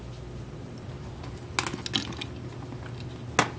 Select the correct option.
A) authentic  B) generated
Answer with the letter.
A